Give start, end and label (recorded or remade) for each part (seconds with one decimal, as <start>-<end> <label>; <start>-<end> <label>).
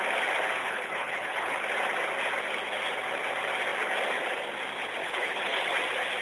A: 0.0-0.6 recorded; 0.6-1.6 remade; 1.6-5.0 recorded; 5.0-5.6 remade; 5.6-6.2 recorded